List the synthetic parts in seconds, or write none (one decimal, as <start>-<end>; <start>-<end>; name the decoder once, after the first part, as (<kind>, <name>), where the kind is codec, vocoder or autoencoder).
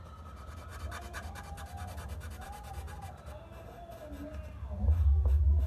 none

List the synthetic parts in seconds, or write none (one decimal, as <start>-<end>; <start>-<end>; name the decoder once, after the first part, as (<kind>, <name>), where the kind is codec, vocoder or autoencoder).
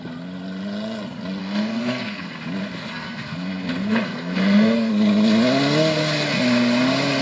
1.4-2.4 (codec, SNAC); 2.9-4.9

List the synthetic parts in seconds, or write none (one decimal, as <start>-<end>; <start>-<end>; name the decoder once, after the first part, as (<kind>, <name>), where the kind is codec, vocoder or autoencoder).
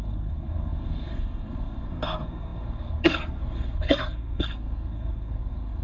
0.0-5.8 (codec, SNAC)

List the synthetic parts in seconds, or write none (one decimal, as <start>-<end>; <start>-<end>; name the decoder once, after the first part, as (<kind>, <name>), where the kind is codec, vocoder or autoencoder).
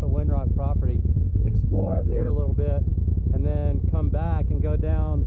1.1-2.3 (codec, SNAC)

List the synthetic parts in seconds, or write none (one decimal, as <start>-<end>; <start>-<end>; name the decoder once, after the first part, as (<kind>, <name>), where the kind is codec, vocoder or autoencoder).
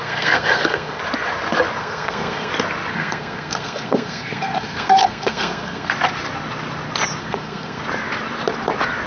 0.0-1.0 (codec, SNAC); 1.8-2.5; 2.9-5.9; 7.2-7.8